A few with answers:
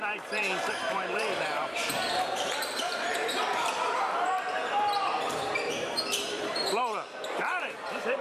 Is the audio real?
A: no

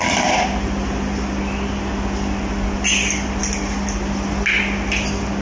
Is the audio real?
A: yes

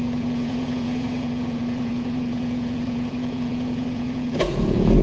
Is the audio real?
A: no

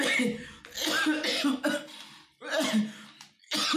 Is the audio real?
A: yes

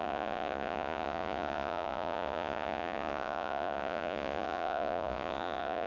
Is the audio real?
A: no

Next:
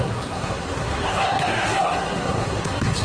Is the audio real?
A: no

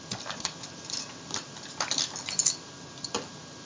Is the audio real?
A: yes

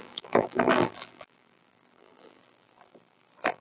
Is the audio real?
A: no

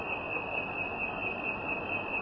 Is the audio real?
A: yes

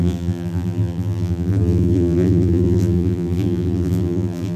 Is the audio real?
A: no